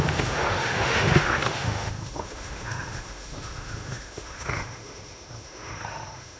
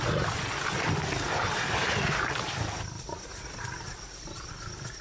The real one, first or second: second